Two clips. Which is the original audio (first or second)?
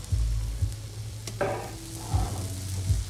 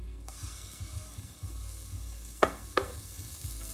first